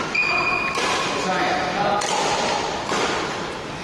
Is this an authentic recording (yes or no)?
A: yes